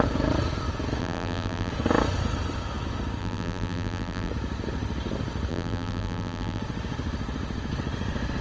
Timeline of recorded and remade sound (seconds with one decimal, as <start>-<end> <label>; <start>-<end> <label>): 0.0-1.0 recorded; 1.0-1.7 remade; 1.7-3.2 recorded; 3.2-4.3 remade; 4.3-5.5 recorded; 5.5-6.6 remade; 6.6-8.4 recorded